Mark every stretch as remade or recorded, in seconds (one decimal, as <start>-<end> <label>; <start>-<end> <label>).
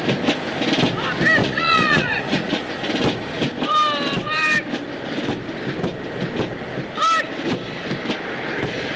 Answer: 0.0-1.4 recorded; 1.4-2.7 remade; 2.7-9.0 recorded